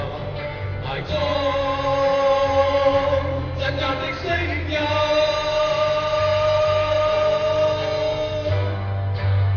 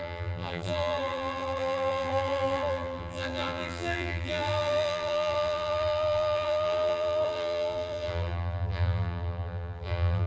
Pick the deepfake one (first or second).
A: second